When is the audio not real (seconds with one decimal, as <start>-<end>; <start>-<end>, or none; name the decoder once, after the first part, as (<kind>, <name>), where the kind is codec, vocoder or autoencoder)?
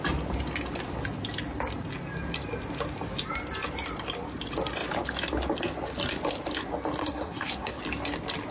7.0-7.8 (codec, SNAC)